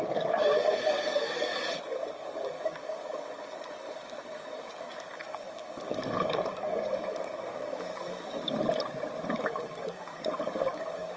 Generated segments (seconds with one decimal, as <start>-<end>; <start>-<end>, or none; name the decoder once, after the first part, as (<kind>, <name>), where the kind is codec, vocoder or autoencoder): 0.0-8.4 (codec, DAC); 9.3-11.2